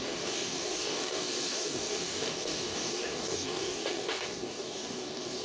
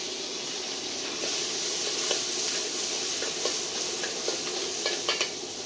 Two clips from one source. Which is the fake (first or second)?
first